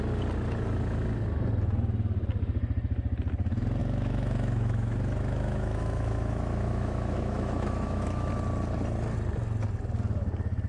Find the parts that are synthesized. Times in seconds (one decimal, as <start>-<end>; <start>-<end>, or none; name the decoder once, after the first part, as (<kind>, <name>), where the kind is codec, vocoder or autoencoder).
3.8-8.3 (autoencoder, DAC-VAE)